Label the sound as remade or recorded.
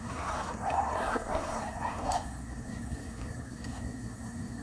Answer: remade